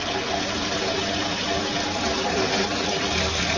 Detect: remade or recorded recorded